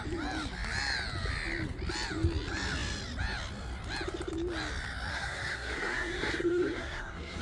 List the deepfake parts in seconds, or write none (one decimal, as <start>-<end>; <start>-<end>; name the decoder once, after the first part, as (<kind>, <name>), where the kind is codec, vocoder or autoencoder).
5.1-7.4 (codec, SNAC)

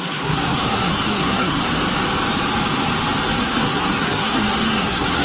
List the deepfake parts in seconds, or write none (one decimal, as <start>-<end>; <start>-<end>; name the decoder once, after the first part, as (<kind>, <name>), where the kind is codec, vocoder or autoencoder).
0.0-1.6 (codec, SNAC); 3.4-5.2